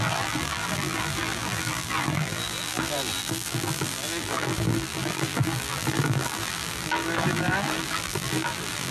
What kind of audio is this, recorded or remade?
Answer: remade